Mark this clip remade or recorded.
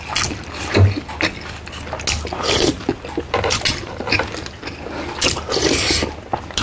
recorded